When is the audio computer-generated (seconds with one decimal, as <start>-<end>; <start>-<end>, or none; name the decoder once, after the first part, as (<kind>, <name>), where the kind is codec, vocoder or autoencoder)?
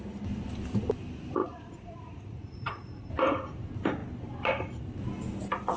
1.4-3.1 (vocoder, Vocos)